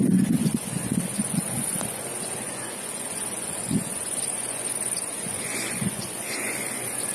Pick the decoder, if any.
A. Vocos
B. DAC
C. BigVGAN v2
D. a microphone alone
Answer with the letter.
A